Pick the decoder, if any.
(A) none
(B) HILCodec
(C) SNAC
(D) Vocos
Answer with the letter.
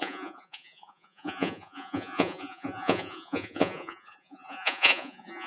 D